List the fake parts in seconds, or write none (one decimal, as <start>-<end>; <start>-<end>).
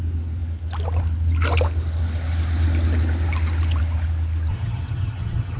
4.5-5.6